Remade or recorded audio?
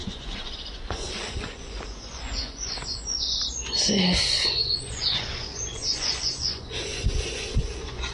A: remade